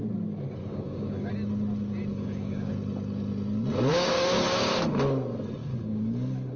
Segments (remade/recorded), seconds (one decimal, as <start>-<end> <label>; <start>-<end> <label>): 0.0-0.6 recorded; 0.6-1.3 remade; 1.3-2.1 recorded; 2.1-2.7 remade; 2.7-3.9 recorded; 3.9-4.8 remade; 4.8-5.6 recorded; 5.6-6.6 remade